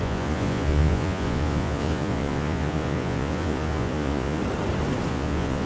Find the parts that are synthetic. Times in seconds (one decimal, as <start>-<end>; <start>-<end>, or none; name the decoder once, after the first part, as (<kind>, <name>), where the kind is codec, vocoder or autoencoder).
0.0-4.4 (vocoder, Vocos); 5.1-5.7

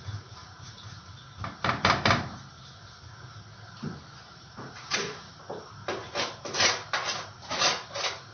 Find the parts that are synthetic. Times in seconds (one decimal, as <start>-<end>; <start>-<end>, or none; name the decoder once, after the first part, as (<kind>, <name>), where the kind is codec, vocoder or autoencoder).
0.4-1.0 (vocoder, Vocos); 4.2-5.3

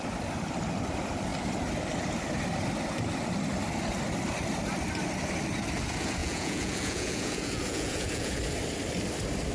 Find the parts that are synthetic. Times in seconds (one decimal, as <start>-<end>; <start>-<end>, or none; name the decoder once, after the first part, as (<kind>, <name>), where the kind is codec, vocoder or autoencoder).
6.2-8.4 (vocoder, Vocos)

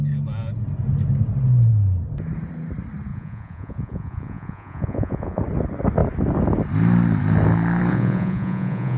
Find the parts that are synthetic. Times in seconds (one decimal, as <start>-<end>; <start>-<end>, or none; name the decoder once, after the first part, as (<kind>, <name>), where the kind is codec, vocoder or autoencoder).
3.1-5.4 (vocoder, Vocos); 7.9-9.0

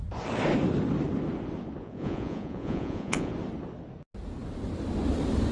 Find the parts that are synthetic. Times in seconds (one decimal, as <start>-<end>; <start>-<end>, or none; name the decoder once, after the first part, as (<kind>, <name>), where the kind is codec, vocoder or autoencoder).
1.8-3.3 (vocoder, Vocos)